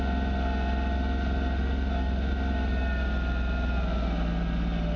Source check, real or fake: real